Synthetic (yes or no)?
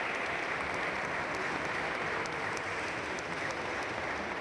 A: no